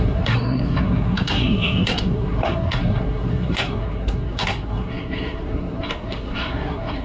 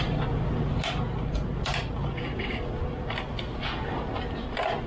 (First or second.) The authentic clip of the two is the second